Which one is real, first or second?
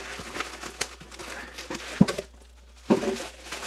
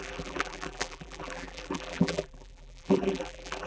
first